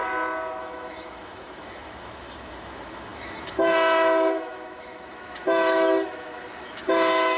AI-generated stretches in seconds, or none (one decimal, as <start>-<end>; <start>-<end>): 0.6-7.4